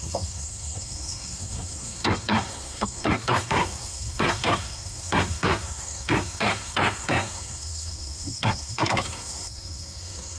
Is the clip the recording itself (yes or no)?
no